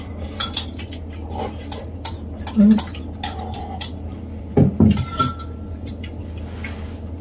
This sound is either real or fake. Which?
real